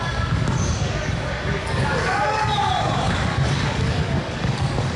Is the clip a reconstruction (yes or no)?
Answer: yes